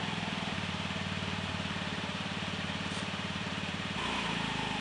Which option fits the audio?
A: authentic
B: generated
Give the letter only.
B